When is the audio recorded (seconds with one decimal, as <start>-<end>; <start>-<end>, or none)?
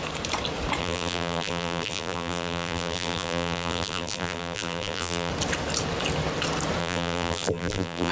0.0-0.8; 5.3-6.8